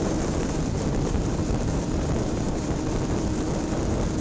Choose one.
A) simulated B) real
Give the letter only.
A